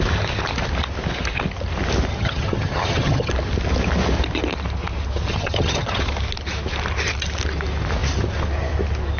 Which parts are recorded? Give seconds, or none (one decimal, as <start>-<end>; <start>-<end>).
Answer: 0.0-2.1; 3.3-5.3; 6.0-9.2